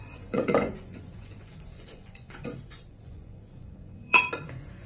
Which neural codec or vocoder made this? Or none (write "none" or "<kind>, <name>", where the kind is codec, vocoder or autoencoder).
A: vocoder, Vocos